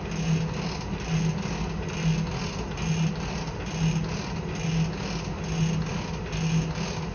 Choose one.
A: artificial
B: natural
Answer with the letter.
B